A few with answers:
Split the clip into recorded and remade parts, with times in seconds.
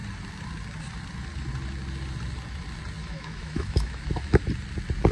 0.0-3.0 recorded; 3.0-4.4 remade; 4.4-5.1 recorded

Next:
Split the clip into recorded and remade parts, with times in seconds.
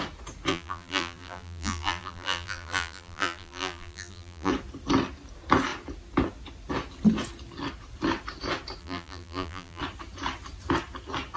0.0-0.5 recorded; 0.5-4.5 remade; 4.5-8.8 recorded; 8.8-9.8 remade; 9.8-11.4 recorded